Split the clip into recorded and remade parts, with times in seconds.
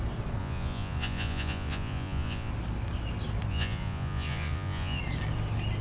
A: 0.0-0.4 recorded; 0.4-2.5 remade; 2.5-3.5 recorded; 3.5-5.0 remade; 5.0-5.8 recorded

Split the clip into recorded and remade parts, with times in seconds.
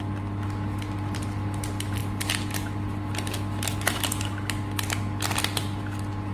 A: 0.0-6.3 recorded